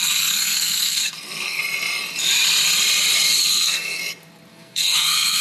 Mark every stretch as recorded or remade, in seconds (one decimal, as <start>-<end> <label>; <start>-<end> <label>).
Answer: 0.0-1.6 remade; 1.6-3.4 recorded; 3.4-4.0 remade; 4.0-4.5 recorded; 4.5-5.4 remade